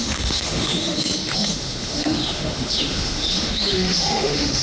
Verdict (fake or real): fake